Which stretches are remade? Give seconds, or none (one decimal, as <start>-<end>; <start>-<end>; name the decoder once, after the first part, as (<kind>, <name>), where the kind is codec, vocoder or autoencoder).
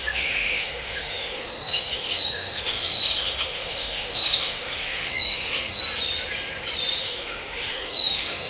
0.0-5.8 (autoencoder, DAC-VAE); 7.0-8.5